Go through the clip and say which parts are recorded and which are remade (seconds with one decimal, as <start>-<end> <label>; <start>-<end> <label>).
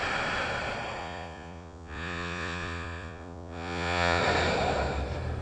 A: 0.0-1.0 recorded; 1.0-4.2 remade; 4.2-5.4 recorded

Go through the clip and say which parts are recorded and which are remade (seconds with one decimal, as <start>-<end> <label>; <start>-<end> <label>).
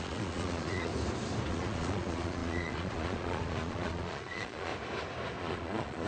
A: 0.0-0.9 remade; 0.9-1.5 recorded; 1.5-4.7 remade; 4.7-5.4 recorded; 5.4-6.1 remade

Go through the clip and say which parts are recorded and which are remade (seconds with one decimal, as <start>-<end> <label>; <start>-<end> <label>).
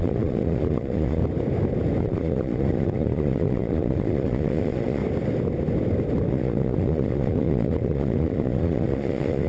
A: 0.0-1.2 remade; 1.2-2.0 recorded; 2.0-5.0 remade; 5.0-6.3 recorded; 6.3-9.5 remade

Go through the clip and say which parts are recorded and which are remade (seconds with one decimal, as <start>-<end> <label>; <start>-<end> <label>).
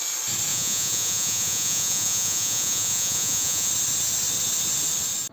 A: 0.0-0.5 recorded; 0.5-3.7 remade; 3.7-5.3 recorded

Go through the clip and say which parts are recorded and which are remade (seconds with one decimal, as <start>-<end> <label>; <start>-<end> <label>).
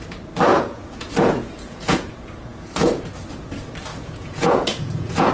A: 0.0-0.5 recorded; 0.5-2.1 remade; 2.1-2.5 recorded; 2.5-3.1 remade; 3.1-3.9 recorded; 3.9-5.3 remade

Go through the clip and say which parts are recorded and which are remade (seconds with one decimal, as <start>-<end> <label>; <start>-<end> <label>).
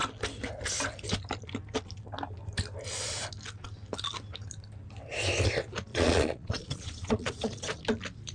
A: 0.0-5.9 recorded; 5.9-7.8 remade; 7.8-8.3 recorded